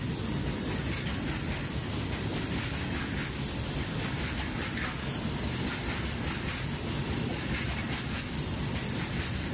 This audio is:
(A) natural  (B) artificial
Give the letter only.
A